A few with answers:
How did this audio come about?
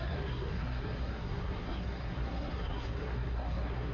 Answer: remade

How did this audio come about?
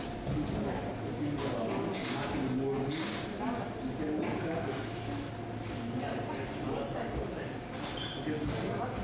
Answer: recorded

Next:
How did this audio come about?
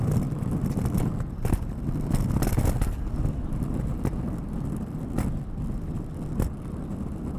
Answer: recorded